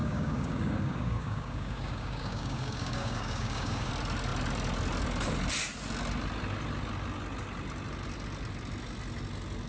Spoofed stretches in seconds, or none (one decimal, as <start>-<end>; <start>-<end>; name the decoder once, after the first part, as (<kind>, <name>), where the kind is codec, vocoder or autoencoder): 0.0-3.9 (codec, DAC)